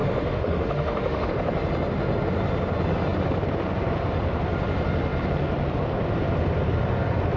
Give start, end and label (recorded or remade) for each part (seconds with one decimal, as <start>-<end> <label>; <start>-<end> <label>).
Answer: 0.0-1.3 remade; 1.3-7.4 recorded